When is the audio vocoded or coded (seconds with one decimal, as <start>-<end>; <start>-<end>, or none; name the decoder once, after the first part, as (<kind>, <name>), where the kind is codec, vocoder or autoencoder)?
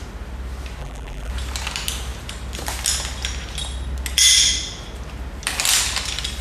0.8-1.3 (vocoder, BigVGAN v2)